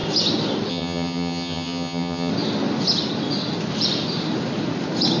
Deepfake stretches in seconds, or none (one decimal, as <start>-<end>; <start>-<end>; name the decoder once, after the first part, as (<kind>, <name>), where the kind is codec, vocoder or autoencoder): 0.7-2.3 (vocoder, HiFi-GAN)